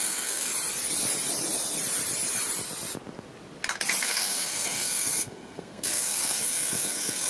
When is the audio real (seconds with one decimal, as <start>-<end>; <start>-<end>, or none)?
0.5-4.0